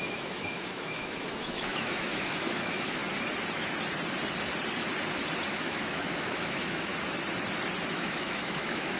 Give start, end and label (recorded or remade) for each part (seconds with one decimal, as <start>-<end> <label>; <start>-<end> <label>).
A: 0.0-3.0 remade; 3.0-5.5 recorded; 5.5-6.9 remade; 6.9-7.9 recorded; 7.9-9.0 remade